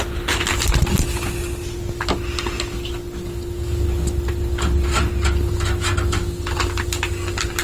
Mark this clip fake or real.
real